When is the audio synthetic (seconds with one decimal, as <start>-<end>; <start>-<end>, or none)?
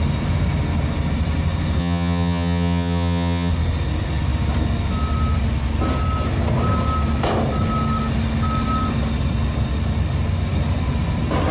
1.8-3.5